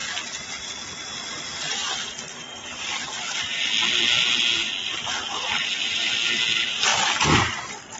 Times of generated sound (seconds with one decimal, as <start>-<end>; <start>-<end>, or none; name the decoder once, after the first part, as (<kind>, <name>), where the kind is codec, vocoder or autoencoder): 6.9-8.0 (vocoder, BigVGAN v2)